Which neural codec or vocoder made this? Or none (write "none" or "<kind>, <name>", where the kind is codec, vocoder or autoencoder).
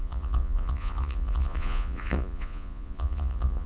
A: vocoder, Vocos